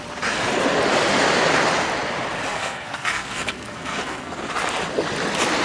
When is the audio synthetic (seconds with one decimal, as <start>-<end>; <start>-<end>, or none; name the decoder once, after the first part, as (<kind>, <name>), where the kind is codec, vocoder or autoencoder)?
2.5-4.4 (codec, SNAC)